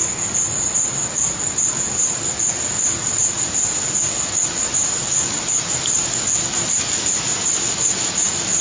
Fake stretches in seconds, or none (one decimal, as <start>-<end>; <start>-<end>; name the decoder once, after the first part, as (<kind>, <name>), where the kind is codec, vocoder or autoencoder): none

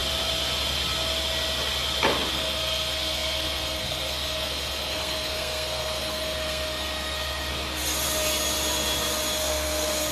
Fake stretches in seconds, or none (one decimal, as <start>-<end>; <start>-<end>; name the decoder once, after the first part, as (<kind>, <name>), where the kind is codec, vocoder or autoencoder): 2.3-7.5 (codec, SNAC); 9.4-10.1

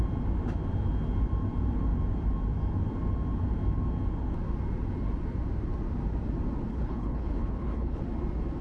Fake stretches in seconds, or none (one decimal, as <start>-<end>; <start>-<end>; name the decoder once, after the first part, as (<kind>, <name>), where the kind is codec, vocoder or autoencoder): 6.7-8.0 (codec, HILCodec)